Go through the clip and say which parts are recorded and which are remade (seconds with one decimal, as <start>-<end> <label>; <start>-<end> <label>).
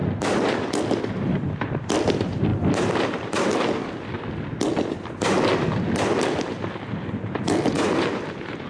0.0-8.7 recorded